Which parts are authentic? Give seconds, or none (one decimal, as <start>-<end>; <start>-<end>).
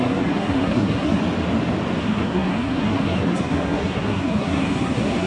1.2-2.0